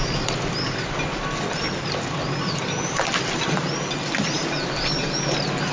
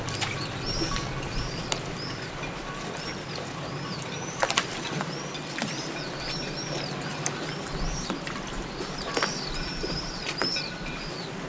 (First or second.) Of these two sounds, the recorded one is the first